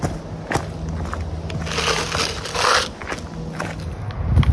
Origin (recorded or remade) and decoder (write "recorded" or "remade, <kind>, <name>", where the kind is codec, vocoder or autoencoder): recorded